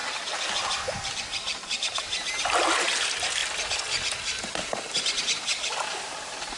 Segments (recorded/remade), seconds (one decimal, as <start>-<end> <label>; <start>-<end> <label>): 0.0-3.4 remade; 3.4-5.2 recorded; 5.2-6.6 remade